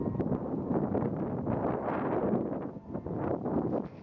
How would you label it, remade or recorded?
recorded